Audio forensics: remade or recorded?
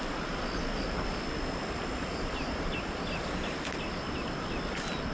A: recorded